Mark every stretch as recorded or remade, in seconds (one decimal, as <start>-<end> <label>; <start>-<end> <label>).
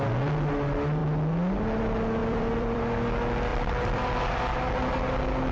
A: 0.0-2.2 recorded; 2.2-2.8 remade; 2.8-3.5 recorded; 3.5-4.5 remade; 4.5-5.5 recorded